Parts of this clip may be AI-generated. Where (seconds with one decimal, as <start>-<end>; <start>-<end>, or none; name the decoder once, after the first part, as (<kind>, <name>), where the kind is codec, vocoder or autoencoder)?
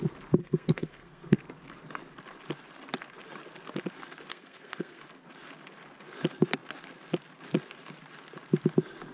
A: 0.4-1.4 (codec, SNAC); 4.3-5.0